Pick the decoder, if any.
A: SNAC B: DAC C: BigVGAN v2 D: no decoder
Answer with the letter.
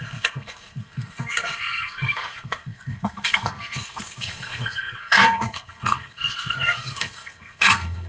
A